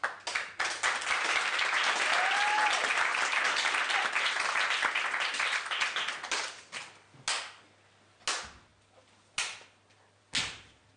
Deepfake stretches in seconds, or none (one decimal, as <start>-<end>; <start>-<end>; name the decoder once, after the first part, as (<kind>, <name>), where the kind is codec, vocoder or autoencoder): none